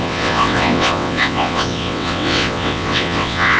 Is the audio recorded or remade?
remade